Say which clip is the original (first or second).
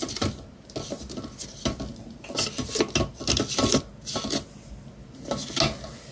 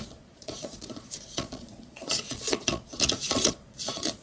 first